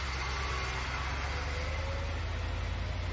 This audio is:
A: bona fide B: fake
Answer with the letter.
A